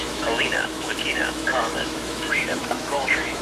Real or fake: fake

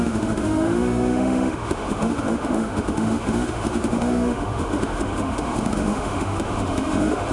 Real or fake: fake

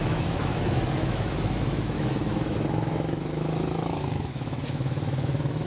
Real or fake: fake